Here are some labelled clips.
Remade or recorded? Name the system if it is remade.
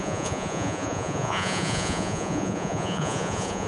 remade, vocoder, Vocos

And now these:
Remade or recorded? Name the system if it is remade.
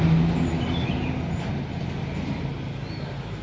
recorded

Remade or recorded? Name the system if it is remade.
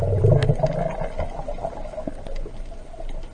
recorded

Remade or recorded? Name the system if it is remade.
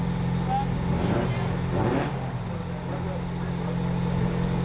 recorded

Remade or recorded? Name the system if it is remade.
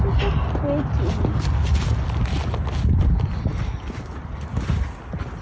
recorded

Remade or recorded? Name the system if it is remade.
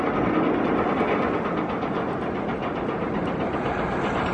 recorded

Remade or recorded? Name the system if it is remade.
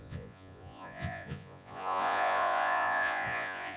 remade, vocoder, Vocos